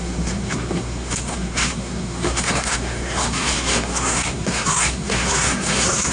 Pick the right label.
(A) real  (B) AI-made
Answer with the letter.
B